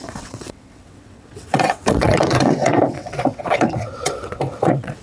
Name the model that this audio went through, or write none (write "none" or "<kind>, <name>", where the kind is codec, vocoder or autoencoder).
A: vocoder, WaveNeXt